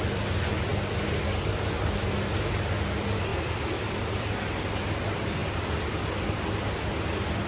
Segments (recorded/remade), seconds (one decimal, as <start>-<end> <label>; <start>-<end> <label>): 0.0-7.5 recorded